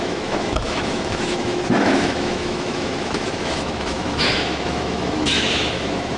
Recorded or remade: remade